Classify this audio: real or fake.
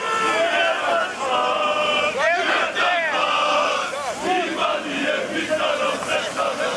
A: real